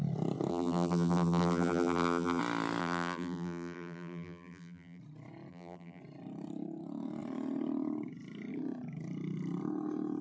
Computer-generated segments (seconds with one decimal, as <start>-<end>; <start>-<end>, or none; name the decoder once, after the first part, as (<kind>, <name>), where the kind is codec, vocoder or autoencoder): 0.5-2.4 (vocoder, BigVGAN v2); 2.8-5.0; 5.5-6.0